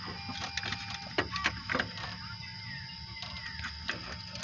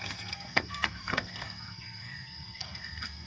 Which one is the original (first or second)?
first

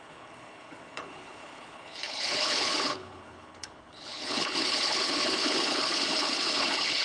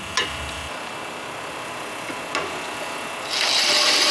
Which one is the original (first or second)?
second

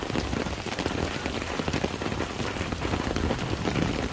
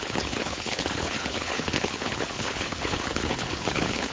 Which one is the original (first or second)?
first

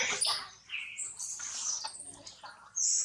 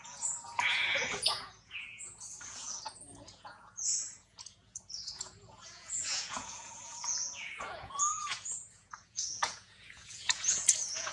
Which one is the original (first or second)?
first